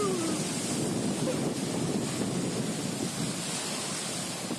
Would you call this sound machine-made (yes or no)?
no